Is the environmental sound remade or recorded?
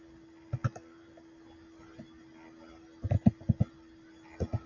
recorded